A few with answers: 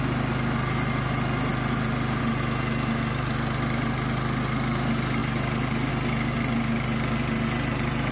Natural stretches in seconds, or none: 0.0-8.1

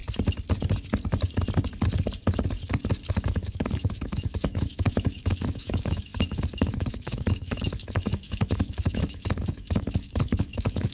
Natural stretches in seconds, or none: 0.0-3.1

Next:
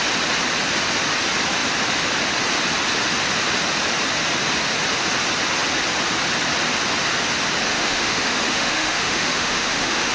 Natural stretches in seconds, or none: 0.0-7.7